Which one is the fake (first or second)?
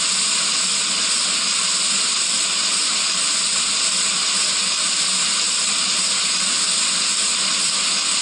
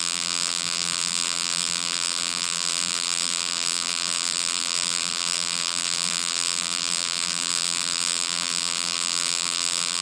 second